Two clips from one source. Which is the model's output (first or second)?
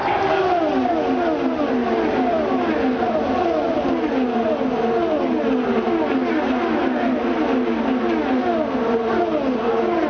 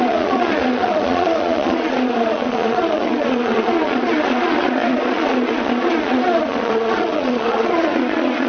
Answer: second